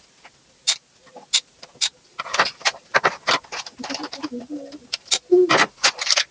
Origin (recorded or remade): recorded